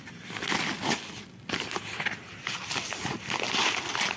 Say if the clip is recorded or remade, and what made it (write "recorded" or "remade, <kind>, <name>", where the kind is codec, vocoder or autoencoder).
recorded